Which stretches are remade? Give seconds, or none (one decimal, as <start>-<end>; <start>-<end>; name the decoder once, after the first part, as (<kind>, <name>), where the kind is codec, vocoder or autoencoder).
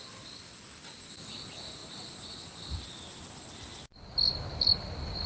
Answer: none